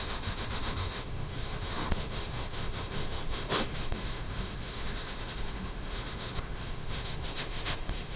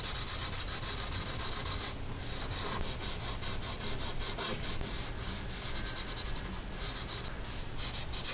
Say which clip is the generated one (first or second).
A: first